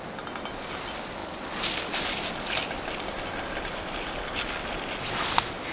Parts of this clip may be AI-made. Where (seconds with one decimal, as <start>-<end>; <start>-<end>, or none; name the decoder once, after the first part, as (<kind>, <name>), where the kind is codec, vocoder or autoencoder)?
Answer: 1.2-4.6 (vocoder, BigVGAN v2)